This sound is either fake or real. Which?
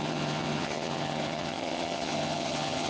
fake